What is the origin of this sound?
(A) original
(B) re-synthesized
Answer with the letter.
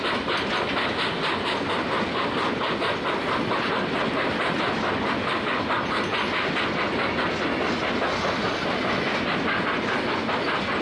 A